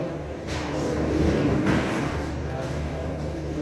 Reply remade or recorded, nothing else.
remade